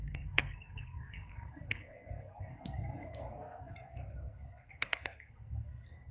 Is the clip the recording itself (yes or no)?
no